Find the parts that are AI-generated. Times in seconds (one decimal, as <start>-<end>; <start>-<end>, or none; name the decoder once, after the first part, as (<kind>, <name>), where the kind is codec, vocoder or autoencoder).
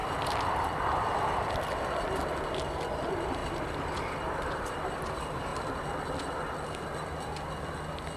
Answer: 0.0-0.8 (vocoder, BigVGAN v2); 3.4-5.0